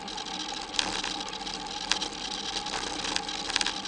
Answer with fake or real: real